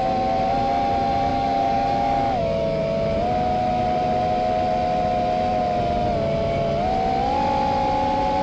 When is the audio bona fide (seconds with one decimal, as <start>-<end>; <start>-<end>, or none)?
0.0-1.3; 2.8-8.4